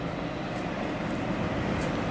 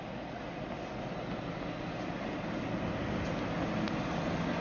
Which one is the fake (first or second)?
first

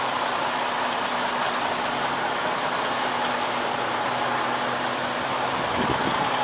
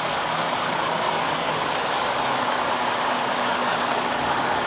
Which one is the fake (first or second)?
second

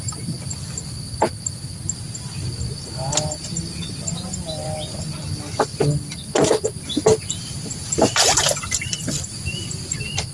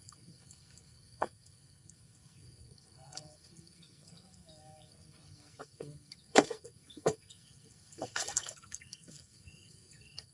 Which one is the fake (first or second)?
second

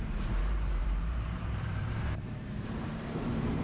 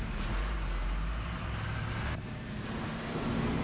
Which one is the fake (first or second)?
first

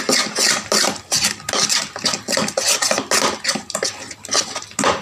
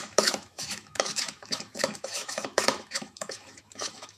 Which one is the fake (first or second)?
second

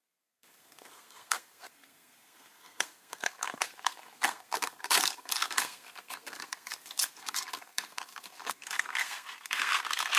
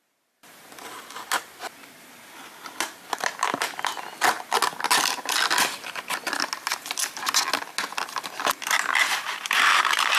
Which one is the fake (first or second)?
first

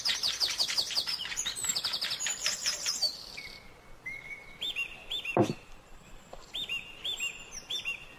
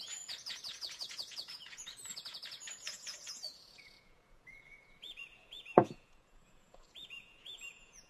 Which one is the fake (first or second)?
second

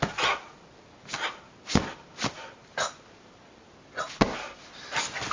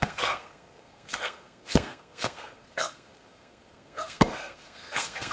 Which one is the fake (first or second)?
second